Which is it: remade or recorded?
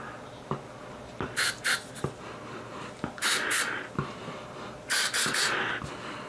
recorded